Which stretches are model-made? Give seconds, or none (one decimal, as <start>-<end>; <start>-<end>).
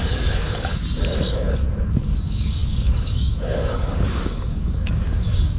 0.0-0.8; 1.3-5.6